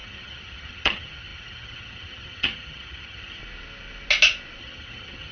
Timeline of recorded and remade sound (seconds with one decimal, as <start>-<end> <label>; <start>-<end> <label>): 0.0-3.4 remade; 3.4-4.6 recorded; 4.6-5.3 remade